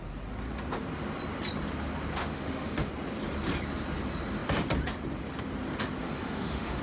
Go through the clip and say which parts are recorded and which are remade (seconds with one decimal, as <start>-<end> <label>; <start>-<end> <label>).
0.0-2.2 recorded; 2.2-2.9 remade; 2.9-6.0 recorded; 6.0-6.8 remade